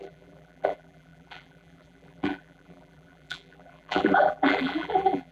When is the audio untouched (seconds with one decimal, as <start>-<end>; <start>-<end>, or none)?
none